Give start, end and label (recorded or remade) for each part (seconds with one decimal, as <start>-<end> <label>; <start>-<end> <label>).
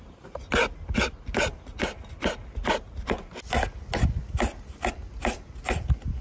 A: 0.0-6.2 recorded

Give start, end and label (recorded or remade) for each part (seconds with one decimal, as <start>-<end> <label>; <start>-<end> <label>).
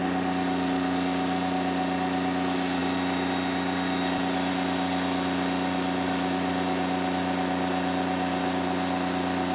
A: 0.0-9.5 recorded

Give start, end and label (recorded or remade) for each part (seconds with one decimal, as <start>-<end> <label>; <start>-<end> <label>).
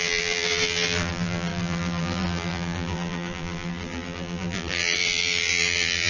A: 0.0-6.1 remade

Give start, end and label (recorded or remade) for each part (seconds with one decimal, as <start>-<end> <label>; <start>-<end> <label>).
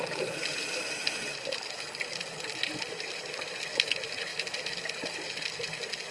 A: 0.0-1.3 recorded; 1.3-2.8 remade; 2.8-4.3 recorded; 4.3-5.3 remade; 5.3-6.1 recorded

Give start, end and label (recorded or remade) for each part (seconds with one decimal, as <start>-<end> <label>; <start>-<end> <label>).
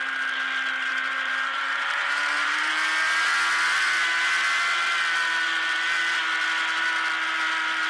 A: 0.0-0.9 recorded; 0.9-2.7 remade; 2.7-7.9 recorded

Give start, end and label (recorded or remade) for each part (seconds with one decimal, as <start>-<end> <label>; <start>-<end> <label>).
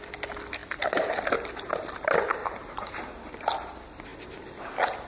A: 0.0-2.4 recorded; 2.4-3.0 remade; 3.0-5.1 recorded